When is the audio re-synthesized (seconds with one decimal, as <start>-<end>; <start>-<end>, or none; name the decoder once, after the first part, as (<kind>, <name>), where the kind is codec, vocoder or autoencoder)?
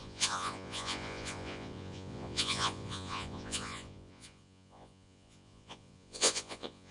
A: 0.0-6.9 (vocoder, Vocos)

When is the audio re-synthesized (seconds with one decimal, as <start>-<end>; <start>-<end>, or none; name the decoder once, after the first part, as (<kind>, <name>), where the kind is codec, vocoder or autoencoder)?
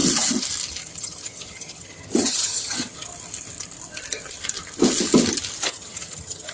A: 1.0-3.1 (vocoder, HiFi-GAN); 5.6-6.5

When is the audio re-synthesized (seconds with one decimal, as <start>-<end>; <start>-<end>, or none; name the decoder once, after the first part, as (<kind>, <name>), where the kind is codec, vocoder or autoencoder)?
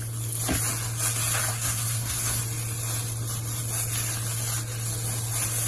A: 1.5-2.4 (codec, SNAC)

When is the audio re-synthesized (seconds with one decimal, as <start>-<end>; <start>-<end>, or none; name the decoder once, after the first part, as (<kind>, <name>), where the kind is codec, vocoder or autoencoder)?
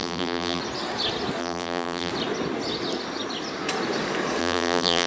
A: 0.0-0.6 (vocoder, BigVGAN v2); 1.4-2.1; 4.4-5.1